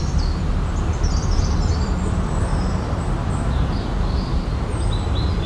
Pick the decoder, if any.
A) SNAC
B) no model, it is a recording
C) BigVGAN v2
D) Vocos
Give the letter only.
C